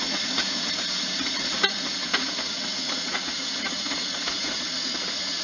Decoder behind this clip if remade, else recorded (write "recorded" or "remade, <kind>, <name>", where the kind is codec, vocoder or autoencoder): remade, vocoder, Vocos